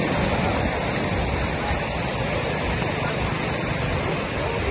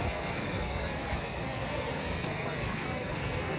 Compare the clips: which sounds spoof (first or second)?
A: second